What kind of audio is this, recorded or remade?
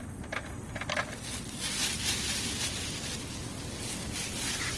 recorded